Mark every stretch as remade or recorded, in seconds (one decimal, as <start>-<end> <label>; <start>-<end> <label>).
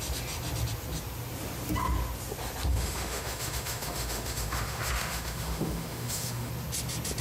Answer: 0.0-2.7 recorded; 2.7-6.5 remade; 6.5-7.2 recorded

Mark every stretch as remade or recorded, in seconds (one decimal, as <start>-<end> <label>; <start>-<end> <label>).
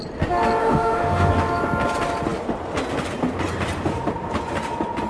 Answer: 0.0-0.6 recorded; 0.6-1.3 remade; 1.3-5.1 recorded